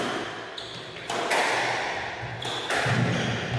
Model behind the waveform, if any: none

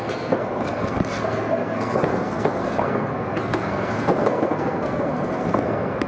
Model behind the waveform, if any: codec, SNAC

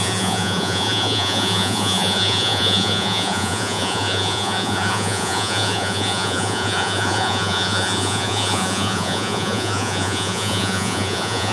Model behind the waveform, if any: vocoder, Vocos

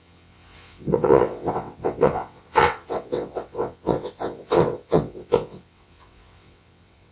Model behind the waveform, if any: vocoder, WaveNeXt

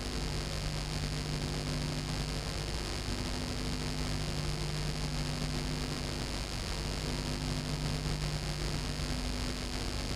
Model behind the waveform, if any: none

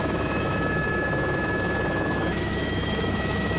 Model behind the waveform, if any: autoencoder, DAC-VAE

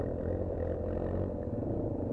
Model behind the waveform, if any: none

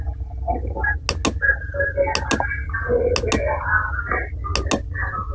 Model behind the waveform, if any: none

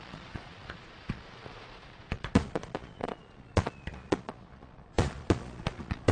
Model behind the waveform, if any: vocoder, Vocos